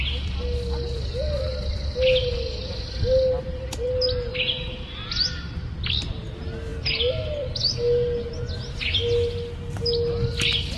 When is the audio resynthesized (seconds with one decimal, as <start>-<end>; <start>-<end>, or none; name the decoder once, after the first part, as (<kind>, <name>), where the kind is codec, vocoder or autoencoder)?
none